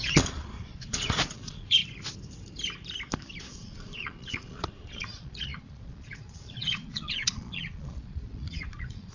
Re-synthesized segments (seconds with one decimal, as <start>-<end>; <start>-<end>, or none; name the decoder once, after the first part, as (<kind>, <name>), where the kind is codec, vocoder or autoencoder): 0.0-1.8 (vocoder, Vocos); 3.4-9.1

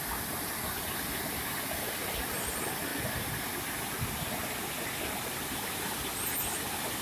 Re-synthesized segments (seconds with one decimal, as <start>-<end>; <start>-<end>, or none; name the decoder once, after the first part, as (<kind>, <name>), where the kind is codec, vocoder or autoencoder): none

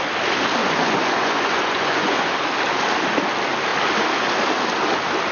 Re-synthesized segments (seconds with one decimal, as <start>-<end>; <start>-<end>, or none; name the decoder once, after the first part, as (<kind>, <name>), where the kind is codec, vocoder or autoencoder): 0.6-2.3 (vocoder, Vocos)

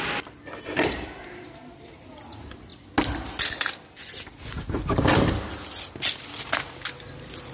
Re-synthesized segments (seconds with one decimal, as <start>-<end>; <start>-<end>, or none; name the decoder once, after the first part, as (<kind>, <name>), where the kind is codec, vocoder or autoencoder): none

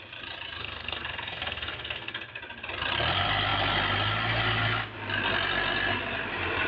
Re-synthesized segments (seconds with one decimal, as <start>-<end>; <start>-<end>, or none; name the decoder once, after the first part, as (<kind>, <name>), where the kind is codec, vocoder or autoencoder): 0.6-2.4 (codec, SNAC)

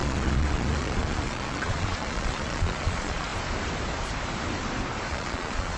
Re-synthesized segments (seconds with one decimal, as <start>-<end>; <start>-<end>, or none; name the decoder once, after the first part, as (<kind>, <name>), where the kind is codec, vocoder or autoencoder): 0.0-3.3 (vocoder, Vocos); 5.1-5.8